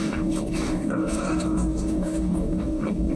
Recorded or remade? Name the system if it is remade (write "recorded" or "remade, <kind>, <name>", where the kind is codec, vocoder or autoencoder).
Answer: remade, codec, DAC